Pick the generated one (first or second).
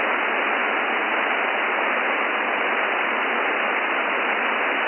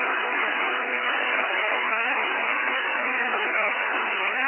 second